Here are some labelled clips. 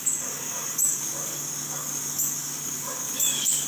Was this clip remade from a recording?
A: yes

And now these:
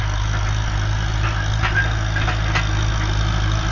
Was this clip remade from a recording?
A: no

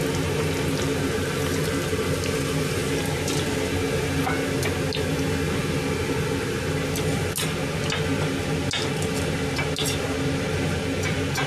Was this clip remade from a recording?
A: no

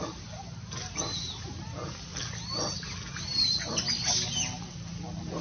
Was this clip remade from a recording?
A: no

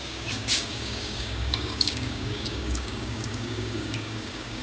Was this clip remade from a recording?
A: yes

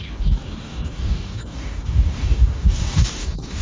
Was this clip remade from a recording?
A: yes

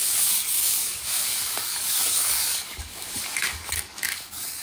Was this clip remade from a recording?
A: yes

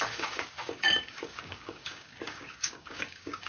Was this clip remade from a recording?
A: yes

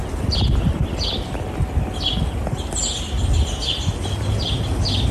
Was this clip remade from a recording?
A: no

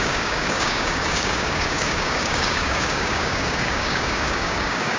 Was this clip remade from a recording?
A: yes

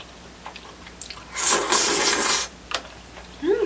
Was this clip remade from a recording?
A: no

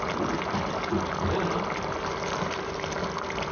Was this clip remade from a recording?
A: no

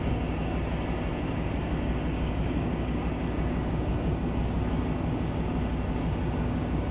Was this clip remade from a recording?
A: yes